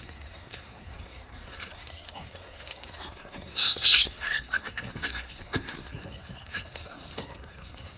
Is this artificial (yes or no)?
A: yes